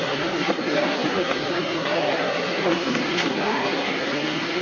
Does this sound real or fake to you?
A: fake